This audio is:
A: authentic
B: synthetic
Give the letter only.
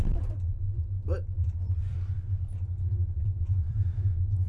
B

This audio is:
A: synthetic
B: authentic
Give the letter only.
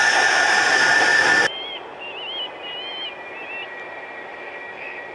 B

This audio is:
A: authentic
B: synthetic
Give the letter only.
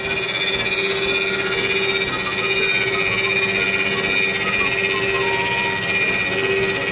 A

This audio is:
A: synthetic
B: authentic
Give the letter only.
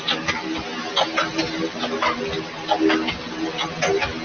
B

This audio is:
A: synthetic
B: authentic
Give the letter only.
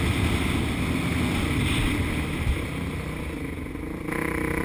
B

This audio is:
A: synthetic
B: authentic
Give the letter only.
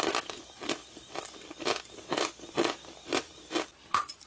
A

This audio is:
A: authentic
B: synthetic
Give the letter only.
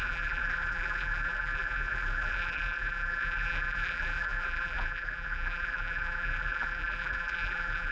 B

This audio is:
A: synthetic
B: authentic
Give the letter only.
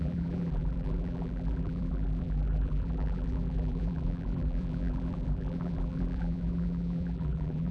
A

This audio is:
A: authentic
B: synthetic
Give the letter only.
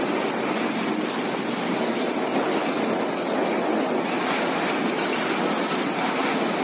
A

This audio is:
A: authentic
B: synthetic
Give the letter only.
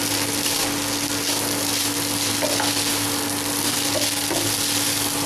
A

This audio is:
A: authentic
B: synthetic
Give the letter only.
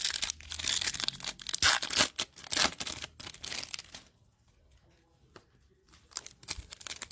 A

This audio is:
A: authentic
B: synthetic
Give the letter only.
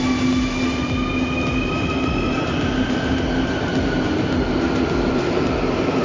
A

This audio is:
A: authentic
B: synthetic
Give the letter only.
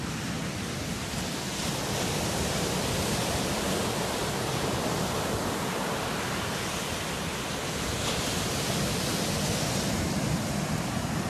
A